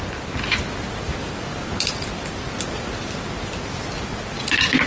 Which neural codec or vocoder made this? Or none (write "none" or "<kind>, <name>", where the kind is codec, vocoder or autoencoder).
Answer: none